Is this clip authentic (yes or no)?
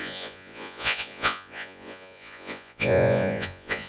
no